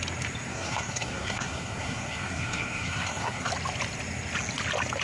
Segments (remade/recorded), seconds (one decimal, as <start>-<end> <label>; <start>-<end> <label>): 0.0-0.5 recorded; 0.5-3.5 remade; 3.5-5.0 recorded